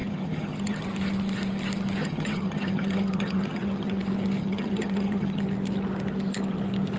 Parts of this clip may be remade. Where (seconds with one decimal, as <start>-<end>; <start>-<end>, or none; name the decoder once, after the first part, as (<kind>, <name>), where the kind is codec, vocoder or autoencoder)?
0.0-0.8 (vocoder, HiFi-GAN); 2.0-4.0; 4.4-5.4